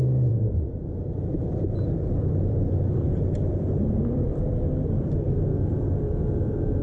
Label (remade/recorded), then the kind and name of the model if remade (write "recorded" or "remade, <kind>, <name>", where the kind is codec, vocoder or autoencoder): remade, vocoder, BigVGAN v2